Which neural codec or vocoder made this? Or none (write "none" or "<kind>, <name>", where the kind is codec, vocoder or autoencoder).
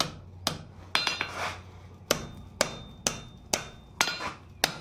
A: none